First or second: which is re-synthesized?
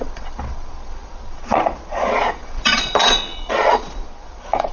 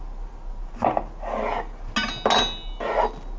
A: first